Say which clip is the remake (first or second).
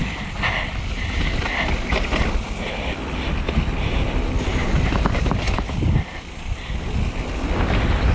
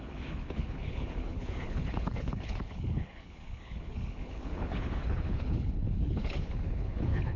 second